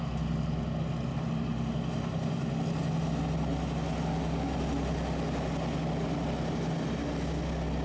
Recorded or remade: recorded